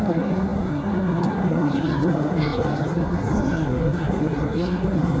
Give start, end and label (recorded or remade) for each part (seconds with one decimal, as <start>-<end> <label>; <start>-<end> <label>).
0.0-5.2 remade